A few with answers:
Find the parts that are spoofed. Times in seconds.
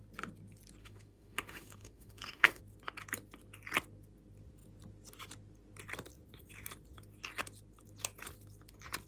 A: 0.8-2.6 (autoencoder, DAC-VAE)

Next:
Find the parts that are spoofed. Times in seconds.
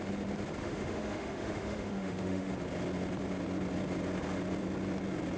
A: 0.6-2.5 (autoencoder, DAC-VAE)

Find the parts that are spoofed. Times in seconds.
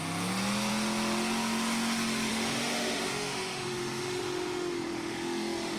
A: 2.3-5.8 (autoencoder, DAC-VAE)